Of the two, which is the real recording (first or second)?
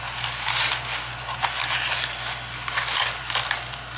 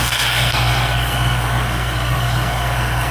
first